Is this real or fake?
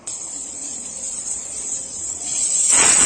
fake